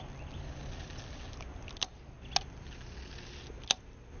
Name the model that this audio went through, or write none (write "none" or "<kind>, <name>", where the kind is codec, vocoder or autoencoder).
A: none